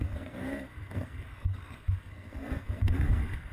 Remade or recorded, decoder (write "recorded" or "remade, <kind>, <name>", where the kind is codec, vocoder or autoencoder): remade, codec, SNAC